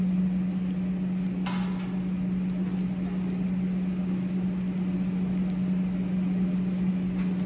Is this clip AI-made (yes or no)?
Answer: no